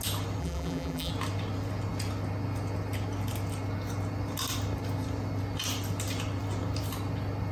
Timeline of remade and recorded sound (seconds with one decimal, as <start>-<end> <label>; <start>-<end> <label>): 0.0-0.4 recorded; 0.4-1.1 remade; 1.1-7.5 recorded